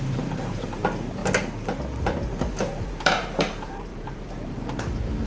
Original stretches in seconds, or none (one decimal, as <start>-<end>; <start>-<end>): 1.2-2.7